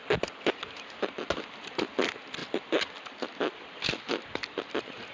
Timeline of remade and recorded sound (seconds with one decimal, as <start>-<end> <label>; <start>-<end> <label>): 0.0-5.1 recorded